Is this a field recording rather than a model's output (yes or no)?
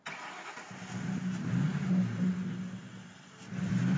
yes